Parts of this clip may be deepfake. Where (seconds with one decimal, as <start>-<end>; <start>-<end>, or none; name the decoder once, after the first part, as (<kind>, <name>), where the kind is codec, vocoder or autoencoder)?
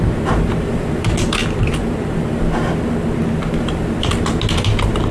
none